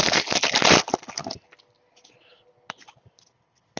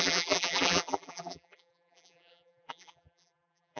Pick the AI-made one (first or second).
second